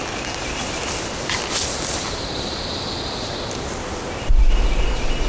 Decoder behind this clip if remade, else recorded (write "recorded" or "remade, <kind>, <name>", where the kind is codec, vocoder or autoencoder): recorded